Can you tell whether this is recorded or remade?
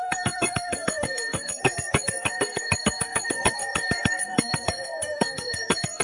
remade